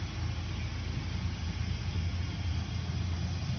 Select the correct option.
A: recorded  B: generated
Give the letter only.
A